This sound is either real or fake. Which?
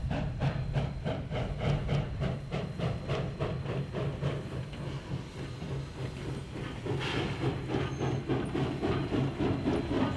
real